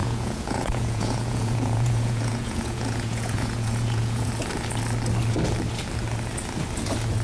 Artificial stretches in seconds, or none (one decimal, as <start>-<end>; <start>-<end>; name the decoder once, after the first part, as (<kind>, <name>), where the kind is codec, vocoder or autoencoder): 0.0-4.3 (vocoder, Vocos)